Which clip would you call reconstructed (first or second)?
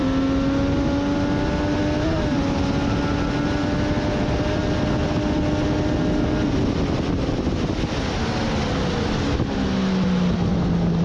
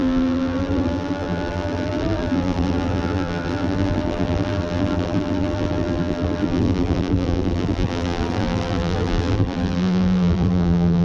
second